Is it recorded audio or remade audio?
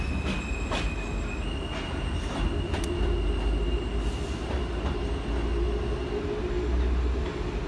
recorded